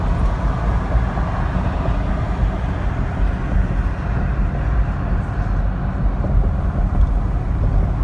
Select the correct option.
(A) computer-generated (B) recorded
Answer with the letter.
B